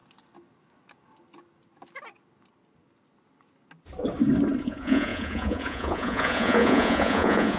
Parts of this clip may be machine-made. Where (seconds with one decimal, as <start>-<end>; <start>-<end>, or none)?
4.6-7.6